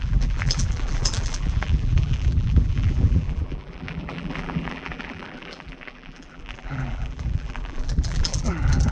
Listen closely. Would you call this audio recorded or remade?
remade